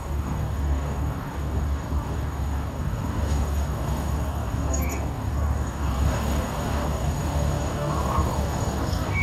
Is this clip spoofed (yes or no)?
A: yes